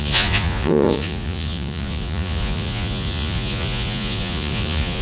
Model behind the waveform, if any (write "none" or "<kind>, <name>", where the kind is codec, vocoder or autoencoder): vocoder, Vocos